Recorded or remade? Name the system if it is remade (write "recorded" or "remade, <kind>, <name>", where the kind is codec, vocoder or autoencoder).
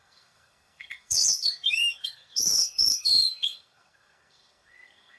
remade, codec, SNAC